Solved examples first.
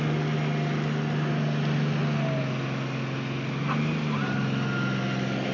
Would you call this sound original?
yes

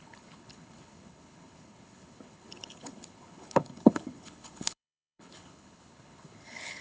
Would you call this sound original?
no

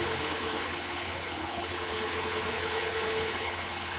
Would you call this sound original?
no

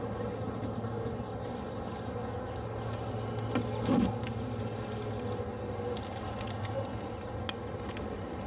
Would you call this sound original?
yes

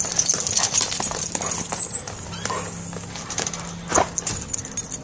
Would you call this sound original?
yes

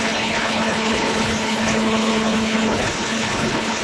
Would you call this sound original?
no